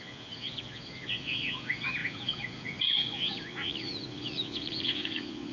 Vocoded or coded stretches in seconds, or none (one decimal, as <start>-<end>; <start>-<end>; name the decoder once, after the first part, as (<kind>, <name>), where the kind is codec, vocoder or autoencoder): 0.0-5.5 (vocoder, Vocos)